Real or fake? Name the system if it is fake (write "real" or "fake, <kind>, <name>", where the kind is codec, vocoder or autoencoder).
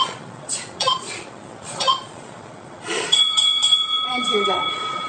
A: fake, vocoder, Vocos